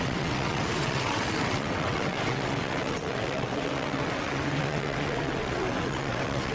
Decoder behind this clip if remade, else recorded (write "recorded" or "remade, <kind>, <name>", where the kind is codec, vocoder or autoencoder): remade, vocoder, WaveNeXt